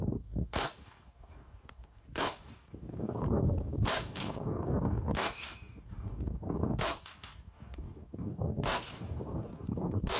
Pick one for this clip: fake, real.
fake